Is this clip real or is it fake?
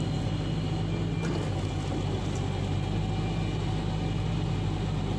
real